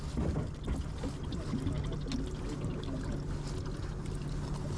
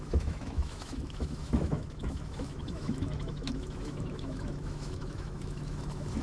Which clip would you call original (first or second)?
first